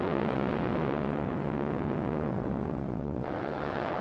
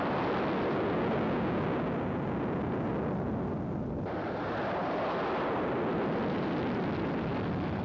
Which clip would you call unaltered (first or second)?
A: second